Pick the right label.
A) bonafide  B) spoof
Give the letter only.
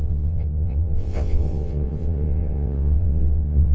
B